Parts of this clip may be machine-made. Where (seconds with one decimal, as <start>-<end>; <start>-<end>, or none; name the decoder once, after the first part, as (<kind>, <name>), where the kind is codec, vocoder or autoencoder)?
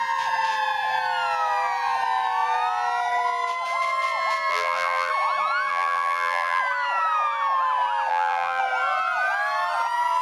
4.5-5.1 (vocoder, BigVGAN v2); 5.7-6.6; 8.1-8.6